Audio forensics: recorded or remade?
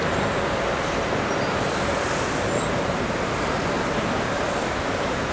recorded